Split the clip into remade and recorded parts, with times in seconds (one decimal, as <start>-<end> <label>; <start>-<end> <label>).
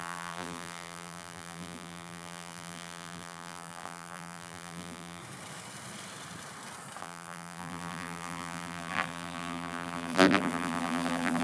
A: 0.0-5.2 remade; 5.2-7.0 recorded; 7.0-11.4 remade